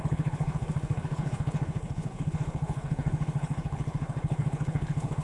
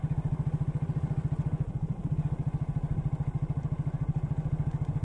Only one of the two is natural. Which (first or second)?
second